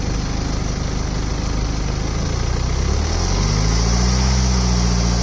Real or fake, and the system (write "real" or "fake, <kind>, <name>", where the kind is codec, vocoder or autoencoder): real